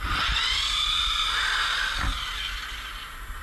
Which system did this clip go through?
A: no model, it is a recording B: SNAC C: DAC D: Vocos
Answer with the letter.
A